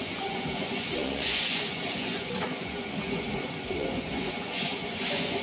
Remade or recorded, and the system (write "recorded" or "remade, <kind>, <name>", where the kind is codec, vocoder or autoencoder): remade, vocoder, Vocos